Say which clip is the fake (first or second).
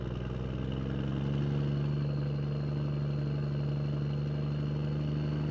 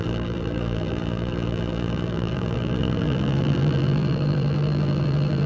second